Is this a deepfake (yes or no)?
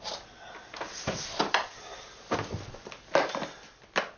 no